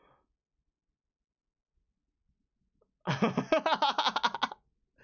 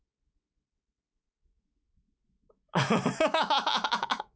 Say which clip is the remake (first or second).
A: second